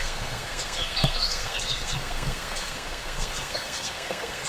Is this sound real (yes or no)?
no